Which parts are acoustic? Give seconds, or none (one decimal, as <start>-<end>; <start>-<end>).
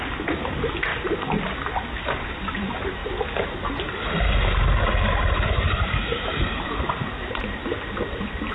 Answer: 0.9-2.3; 3.0-5.2; 7.6-8.5